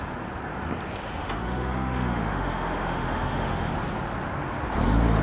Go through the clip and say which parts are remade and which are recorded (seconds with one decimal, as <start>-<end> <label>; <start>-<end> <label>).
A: 0.0-1.2 recorded; 1.2-3.7 remade; 3.7-5.2 recorded